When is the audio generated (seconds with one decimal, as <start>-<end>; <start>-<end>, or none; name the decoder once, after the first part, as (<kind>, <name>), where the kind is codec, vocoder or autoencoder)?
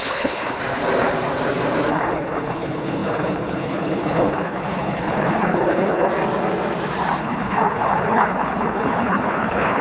0.0-0.6 (codec, HILCodec); 1.9-6.1; 7.2-9.8